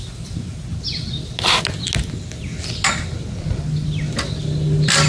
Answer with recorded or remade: recorded